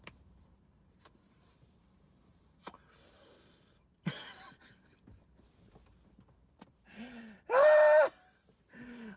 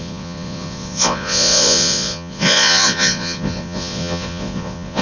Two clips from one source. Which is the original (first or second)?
first